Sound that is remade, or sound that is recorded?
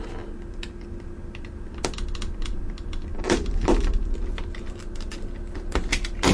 recorded